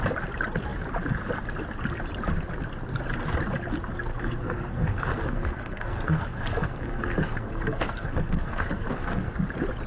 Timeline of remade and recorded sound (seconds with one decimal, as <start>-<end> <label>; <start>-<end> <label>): 0.0-4.1 recorded; 4.1-9.3 remade; 9.3-9.9 recorded